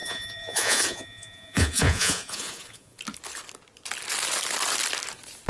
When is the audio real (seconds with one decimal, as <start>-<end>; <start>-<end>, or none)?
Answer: 3.0-5.5